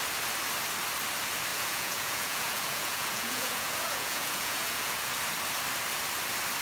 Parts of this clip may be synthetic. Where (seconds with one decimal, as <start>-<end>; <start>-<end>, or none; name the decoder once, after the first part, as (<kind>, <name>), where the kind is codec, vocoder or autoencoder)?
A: 1.5-5.1 (vocoder, Vocos)